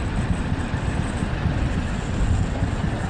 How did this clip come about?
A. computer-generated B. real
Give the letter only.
B